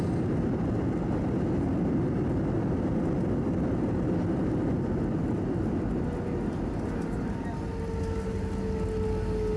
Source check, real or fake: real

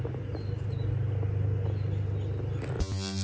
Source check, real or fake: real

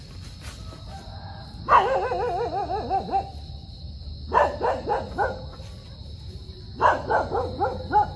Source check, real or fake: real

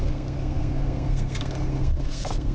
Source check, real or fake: fake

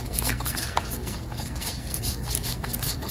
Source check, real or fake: fake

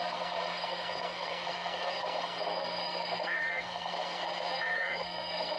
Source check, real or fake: fake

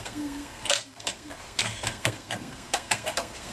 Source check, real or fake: fake